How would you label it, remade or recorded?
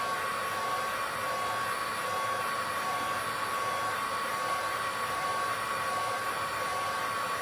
recorded